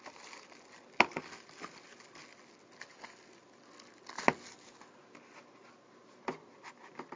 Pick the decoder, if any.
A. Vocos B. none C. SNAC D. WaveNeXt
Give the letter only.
B